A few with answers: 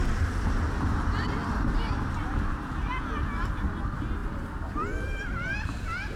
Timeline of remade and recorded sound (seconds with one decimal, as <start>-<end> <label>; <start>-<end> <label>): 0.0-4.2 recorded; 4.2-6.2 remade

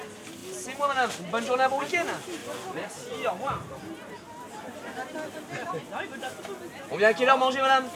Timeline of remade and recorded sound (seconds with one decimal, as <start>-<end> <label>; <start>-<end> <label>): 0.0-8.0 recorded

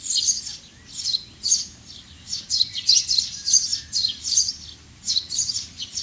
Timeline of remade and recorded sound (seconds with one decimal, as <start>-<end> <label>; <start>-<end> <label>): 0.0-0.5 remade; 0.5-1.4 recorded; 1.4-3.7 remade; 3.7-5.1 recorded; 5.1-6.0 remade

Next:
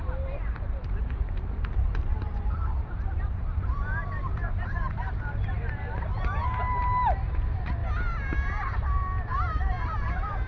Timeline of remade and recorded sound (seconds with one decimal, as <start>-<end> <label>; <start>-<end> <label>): 0.0-7.8 remade; 7.8-8.5 recorded; 8.5-10.5 remade

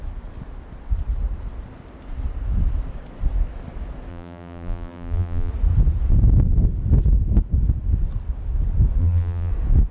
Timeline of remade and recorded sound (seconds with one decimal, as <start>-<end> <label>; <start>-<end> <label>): 0.0-4.1 recorded; 4.1-5.5 remade; 5.5-9.0 recorded; 9.0-9.5 remade; 9.5-9.9 recorded